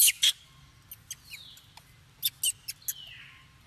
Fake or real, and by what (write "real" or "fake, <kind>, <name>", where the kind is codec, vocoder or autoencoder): real